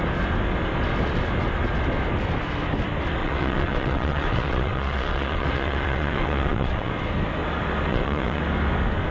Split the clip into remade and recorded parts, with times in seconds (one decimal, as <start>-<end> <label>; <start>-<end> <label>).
0.0-3.2 recorded; 3.2-6.9 remade; 6.9-7.9 recorded; 7.9-8.4 remade; 8.4-9.1 recorded